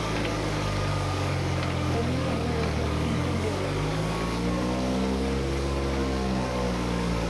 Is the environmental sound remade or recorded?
remade